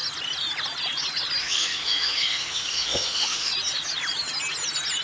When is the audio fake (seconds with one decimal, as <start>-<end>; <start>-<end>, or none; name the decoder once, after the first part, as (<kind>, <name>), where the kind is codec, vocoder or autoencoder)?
1.4-3.5 (autoencoder, DAC-VAE)